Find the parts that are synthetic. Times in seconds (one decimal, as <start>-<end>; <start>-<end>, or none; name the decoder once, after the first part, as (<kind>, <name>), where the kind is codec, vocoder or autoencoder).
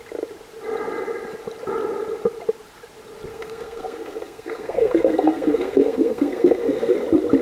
3.3-6.9 (codec, SNAC)